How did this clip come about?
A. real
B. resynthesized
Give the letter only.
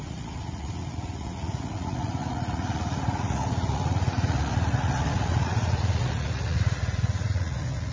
B